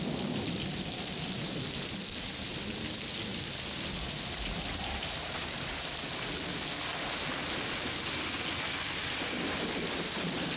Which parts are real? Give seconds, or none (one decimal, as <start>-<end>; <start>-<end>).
0.0-10.6